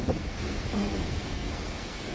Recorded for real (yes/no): no